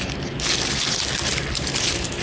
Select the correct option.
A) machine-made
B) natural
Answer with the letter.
B